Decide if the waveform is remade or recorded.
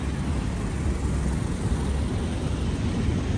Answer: recorded